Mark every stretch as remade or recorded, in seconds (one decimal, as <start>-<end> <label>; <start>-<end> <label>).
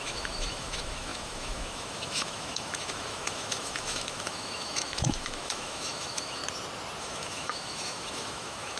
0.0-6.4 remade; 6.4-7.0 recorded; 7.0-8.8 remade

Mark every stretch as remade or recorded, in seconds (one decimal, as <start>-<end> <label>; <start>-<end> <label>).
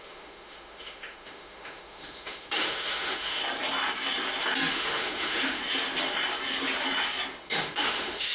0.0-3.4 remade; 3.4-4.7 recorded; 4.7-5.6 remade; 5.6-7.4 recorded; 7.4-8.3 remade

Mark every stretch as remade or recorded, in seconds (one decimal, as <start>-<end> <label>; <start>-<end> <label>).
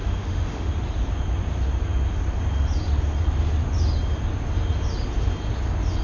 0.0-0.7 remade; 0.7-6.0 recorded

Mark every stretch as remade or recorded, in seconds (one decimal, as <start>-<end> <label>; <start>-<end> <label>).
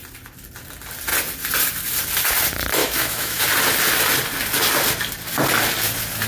0.0-2.8 recorded; 2.8-3.4 remade; 3.4-6.3 recorded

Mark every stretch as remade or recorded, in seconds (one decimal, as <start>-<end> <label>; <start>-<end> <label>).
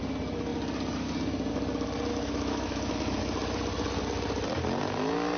0.0-2.1 recorded; 2.1-3.2 remade; 3.2-5.4 recorded